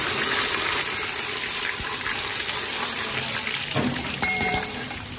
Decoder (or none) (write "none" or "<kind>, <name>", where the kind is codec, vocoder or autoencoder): vocoder, BigVGAN v2